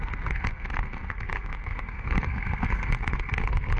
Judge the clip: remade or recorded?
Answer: remade